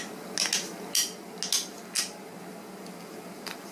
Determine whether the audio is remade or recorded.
recorded